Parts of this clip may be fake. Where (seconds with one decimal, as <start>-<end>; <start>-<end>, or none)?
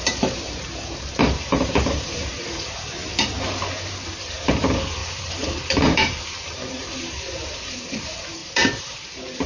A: 0.0-3.0; 3.7-9.5